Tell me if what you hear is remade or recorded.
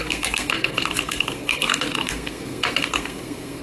remade